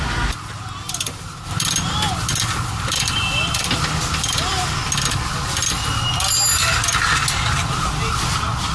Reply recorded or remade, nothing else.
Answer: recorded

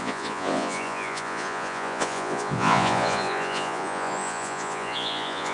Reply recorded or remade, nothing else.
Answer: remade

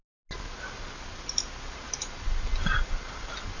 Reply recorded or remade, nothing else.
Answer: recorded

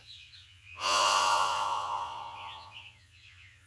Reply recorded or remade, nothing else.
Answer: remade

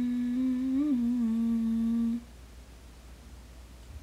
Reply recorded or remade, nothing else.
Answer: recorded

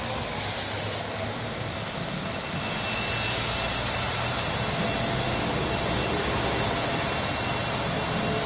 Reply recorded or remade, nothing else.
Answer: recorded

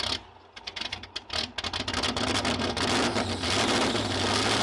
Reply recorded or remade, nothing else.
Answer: recorded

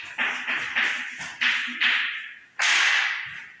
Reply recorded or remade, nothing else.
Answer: recorded